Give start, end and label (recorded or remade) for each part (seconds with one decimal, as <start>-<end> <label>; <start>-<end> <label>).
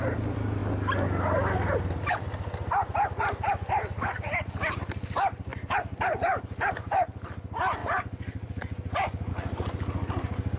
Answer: 0.0-10.6 recorded